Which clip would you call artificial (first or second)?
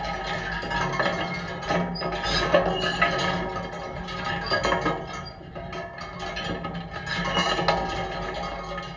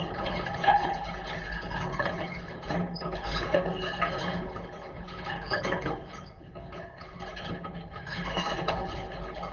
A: second